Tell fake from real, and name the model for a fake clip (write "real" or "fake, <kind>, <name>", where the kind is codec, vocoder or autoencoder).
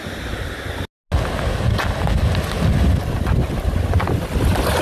real